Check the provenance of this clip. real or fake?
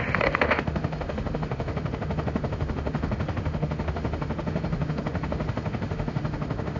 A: fake